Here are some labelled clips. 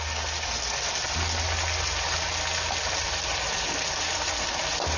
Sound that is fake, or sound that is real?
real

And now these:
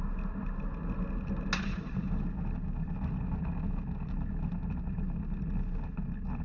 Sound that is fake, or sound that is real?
real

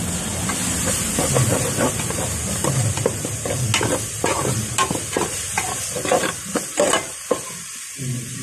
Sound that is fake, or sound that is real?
real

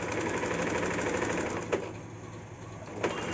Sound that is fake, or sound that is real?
real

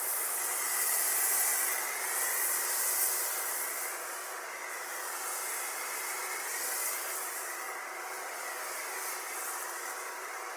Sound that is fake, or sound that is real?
real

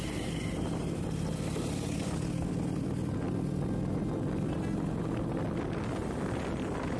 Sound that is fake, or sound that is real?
real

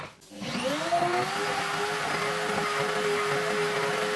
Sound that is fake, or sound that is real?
real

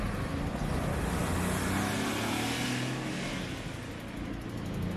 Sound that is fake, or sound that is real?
real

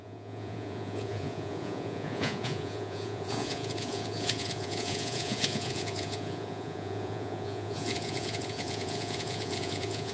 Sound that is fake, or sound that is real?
fake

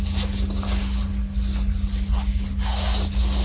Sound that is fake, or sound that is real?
real